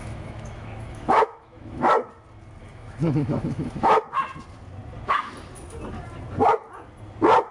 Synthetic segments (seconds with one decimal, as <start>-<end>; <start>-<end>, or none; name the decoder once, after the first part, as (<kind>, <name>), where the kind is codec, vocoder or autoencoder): 0.0-1.9 (autoencoder, DAC-VAE); 2.6-4.0